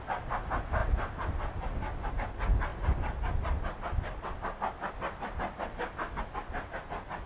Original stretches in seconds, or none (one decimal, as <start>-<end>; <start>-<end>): 0.0-7.3

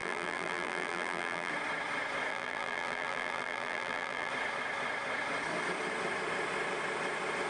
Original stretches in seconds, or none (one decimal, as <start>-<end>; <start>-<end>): 1.5-2.3; 4.3-7.5

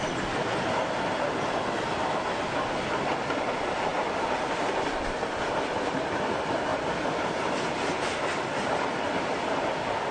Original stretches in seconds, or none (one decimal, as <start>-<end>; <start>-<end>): 0.0-10.1

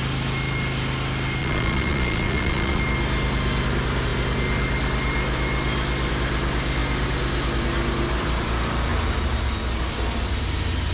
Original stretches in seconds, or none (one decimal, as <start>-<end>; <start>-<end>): 0.0-1.4; 2.8-10.9

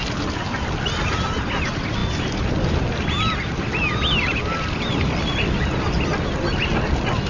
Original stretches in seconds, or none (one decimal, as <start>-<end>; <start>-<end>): 0.0-7.3

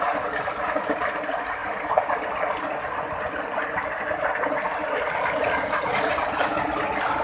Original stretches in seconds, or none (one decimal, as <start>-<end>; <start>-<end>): 0.0-7.2

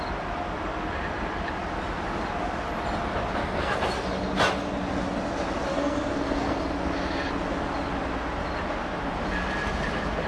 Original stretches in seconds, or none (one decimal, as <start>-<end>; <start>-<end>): 0.0-3.4; 3.9-5.7; 6.6-10.3